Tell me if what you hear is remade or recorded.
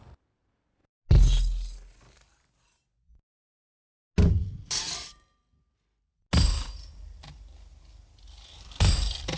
recorded